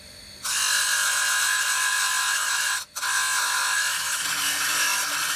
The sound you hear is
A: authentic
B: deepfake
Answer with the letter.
A